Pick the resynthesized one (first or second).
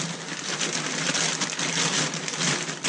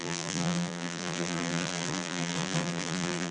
second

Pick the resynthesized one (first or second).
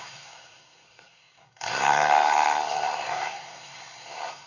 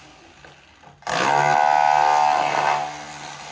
first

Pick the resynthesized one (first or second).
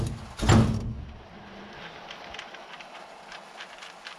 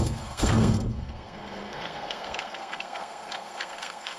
second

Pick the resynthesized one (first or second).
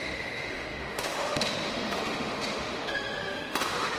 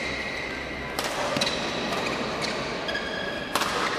first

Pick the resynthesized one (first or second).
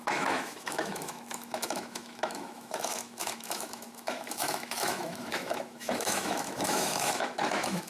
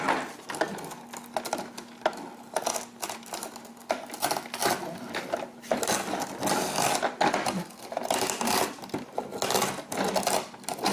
first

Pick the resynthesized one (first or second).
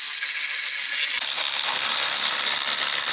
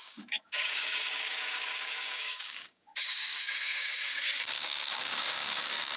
second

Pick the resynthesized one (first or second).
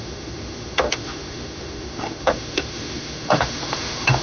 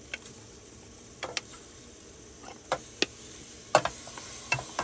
first